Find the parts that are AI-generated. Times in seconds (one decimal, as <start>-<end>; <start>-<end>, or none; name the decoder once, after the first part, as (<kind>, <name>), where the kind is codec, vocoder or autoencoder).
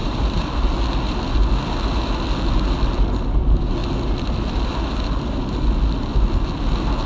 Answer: 0.0-0.6 (vocoder, BigVGAN v2)